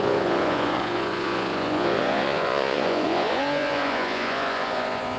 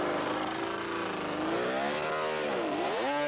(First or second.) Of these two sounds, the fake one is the first